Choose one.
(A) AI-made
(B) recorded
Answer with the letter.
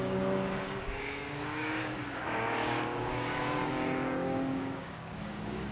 A